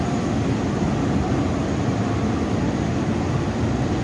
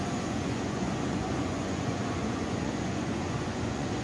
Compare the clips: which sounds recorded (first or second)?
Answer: first